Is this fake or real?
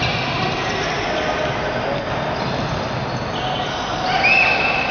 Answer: real